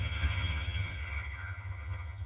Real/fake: fake